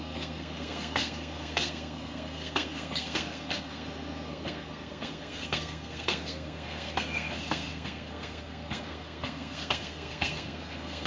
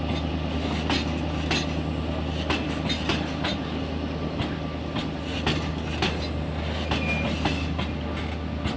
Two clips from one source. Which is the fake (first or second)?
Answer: first